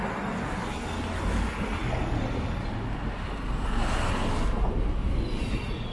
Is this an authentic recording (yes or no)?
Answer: yes